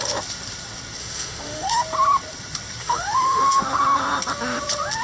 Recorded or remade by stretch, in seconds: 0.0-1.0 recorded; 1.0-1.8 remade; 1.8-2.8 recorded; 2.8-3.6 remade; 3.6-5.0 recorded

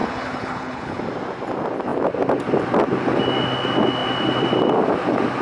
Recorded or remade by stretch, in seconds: 0.0-1.0 remade; 1.0-5.4 recorded

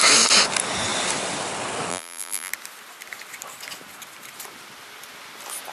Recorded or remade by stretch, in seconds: 0.0-1.9 recorded; 1.9-2.5 remade; 2.5-5.7 recorded